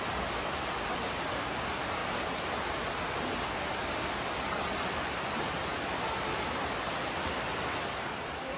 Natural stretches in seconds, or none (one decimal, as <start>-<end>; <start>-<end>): 0.0-8.6